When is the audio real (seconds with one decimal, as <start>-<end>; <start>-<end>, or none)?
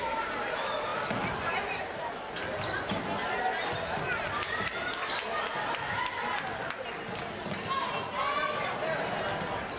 0.0-9.8